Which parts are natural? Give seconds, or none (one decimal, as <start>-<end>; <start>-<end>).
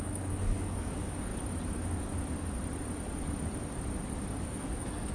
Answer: 1.3-4.4